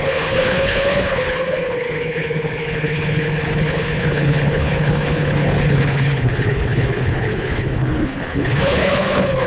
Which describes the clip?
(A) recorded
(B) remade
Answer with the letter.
B